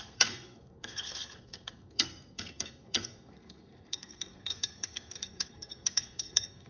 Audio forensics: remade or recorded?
remade